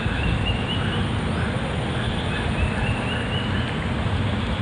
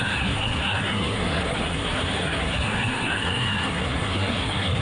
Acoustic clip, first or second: first